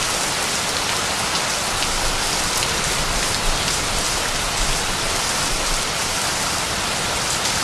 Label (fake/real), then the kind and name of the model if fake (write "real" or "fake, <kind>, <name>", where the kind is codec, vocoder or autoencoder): real